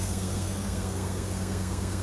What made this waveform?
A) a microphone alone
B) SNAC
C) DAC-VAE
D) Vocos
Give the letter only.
B